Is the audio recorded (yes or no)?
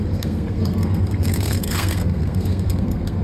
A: no